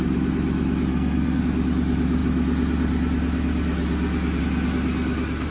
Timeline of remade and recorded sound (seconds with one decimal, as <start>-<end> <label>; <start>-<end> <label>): 0.0-0.9 recorded; 0.9-1.4 remade; 1.4-5.5 recorded